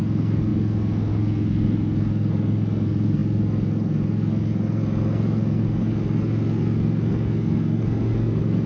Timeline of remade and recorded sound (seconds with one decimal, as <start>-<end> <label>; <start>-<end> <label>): 0.0-8.7 remade